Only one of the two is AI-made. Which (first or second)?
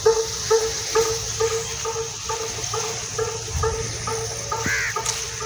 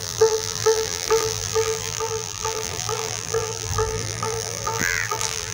second